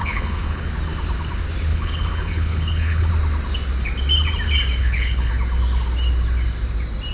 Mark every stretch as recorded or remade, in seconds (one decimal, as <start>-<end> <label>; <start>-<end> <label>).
0.0-0.7 remade; 0.7-1.7 recorded; 1.7-3.1 remade; 3.1-4.8 recorded; 4.8-5.3 remade; 5.3-7.1 recorded